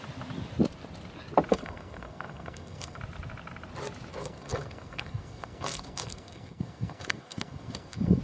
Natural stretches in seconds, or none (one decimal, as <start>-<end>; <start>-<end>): 0.0-1.5; 3.0-4.1